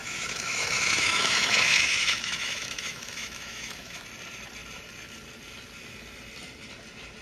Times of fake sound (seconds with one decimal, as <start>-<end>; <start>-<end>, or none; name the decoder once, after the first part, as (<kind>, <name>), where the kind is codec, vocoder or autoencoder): 0.0-4.0 (autoencoder, DAC-VAE)